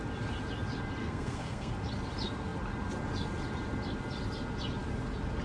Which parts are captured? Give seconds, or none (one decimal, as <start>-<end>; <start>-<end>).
0.0-1.0; 1.7-5.4